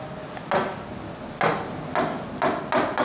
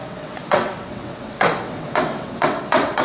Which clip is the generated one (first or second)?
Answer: second